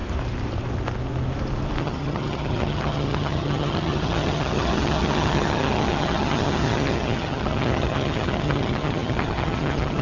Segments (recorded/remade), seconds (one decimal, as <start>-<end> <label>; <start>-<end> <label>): 0.0-1.8 recorded; 1.8-10.0 remade